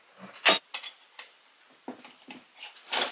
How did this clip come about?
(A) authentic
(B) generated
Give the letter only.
A